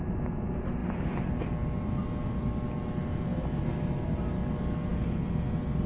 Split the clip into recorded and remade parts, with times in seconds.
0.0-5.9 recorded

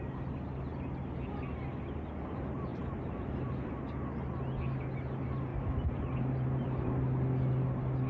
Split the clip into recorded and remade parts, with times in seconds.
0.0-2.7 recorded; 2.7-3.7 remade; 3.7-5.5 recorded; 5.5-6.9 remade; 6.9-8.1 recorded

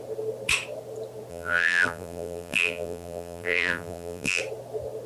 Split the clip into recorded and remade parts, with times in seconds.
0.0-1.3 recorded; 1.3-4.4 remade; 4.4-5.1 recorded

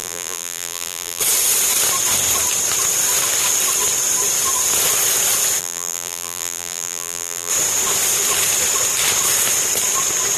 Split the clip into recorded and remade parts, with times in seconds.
0.0-1.2 remade; 1.2-5.6 recorded; 5.6-7.5 remade; 7.5-10.4 recorded

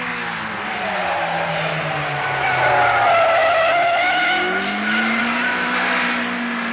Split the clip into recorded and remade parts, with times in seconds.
0.0-6.7 recorded

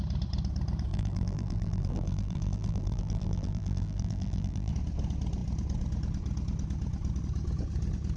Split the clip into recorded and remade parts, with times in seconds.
0.0-0.9 recorded; 0.9-4.7 remade; 4.7-8.2 recorded